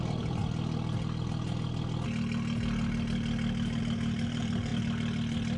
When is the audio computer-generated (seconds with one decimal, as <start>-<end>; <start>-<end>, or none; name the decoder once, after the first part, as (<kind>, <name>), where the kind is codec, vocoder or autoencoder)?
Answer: 0.0-0.4 (vocoder, BigVGAN v2); 3.8-4.7